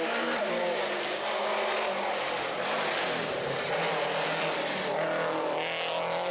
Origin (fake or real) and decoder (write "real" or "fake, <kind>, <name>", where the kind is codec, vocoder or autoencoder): real